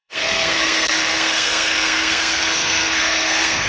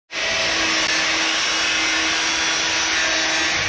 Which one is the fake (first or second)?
first